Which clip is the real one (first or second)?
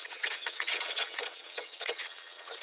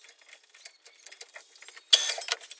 second